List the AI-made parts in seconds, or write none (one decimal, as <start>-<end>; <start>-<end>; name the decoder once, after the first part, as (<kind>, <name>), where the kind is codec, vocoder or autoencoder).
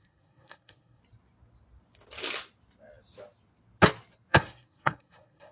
0.0-1.0 (codec, SNAC); 4.3-5.5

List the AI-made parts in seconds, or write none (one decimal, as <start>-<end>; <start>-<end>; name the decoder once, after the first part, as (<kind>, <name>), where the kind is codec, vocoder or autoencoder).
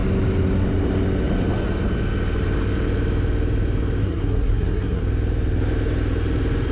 4.0-5.0 (codec, SNAC)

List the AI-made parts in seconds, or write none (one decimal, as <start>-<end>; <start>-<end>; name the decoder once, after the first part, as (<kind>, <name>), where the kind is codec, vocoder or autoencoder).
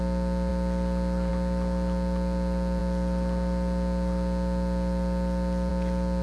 none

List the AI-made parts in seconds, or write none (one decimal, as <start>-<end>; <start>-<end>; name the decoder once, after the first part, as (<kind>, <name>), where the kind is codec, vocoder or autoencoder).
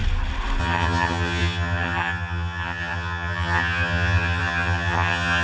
0.6-5.4 (vocoder, HiFi-GAN)